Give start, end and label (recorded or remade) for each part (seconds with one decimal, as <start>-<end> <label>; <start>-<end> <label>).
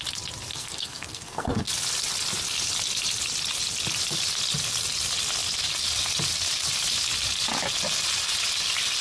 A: 0.0-0.5 recorded; 0.5-1.7 remade; 1.7-9.0 recorded